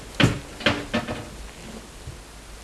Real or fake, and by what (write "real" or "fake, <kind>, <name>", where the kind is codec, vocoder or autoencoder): real